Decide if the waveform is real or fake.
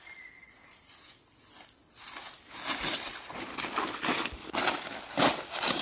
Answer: real